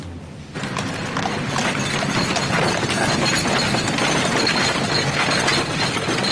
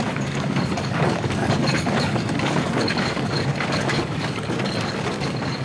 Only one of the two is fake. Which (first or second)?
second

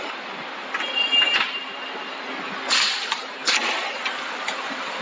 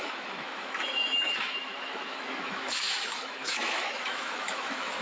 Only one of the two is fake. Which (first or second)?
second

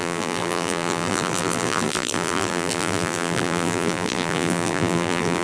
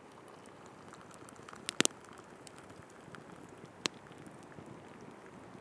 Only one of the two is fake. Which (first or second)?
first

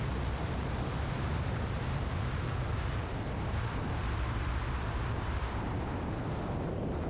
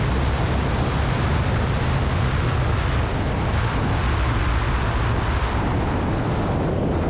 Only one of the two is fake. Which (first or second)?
first